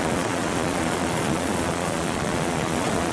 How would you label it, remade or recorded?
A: remade